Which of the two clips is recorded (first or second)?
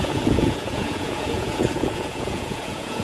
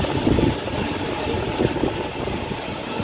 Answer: second